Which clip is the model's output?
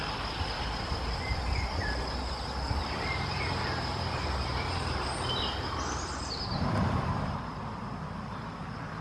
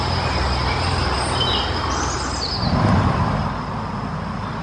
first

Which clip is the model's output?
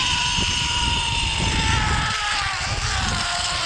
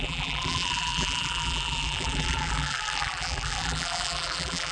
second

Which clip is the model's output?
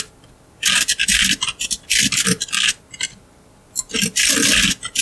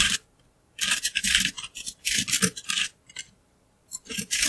second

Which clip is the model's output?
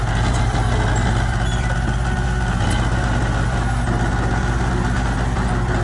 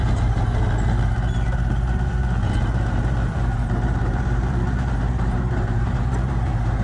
second